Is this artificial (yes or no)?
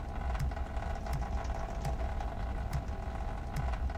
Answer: no